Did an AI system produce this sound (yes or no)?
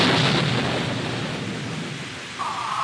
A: no